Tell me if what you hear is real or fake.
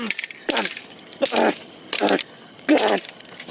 real